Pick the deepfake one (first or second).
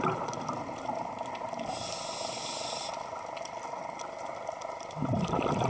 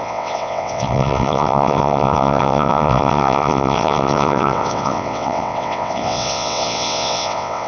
second